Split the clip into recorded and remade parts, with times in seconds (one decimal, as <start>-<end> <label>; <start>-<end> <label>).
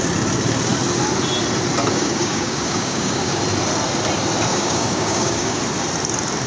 0.0-1.9 recorded; 1.9-3.4 remade; 3.4-4.5 recorded; 4.5-5.6 remade; 5.6-6.5 recorded